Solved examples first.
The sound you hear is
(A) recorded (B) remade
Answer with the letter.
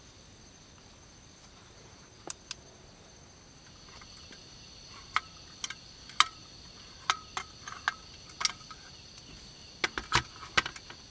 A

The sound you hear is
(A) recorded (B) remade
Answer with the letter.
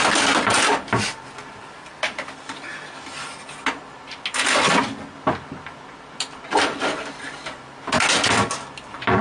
A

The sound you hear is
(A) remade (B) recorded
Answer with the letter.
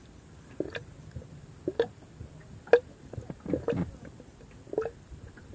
B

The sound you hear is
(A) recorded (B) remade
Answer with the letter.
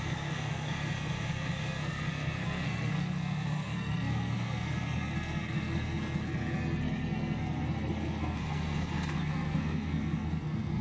B